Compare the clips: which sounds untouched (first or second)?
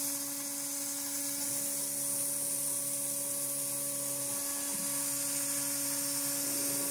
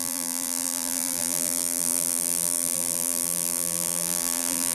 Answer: first